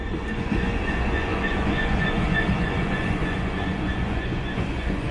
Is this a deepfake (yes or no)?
yes